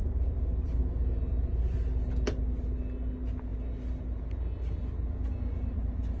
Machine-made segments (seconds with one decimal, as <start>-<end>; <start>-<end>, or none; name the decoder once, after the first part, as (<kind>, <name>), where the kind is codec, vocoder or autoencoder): none